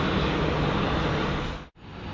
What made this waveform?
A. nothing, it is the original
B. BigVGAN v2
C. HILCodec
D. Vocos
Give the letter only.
A